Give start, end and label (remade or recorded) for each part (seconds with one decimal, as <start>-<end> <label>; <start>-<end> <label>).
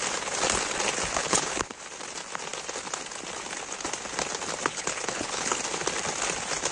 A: 0.0-1.2 recorded; 1.2-1.8 remade; 1.8-4.7 recorded; 4.7-5.6 remade; 5.6-6.7 recorded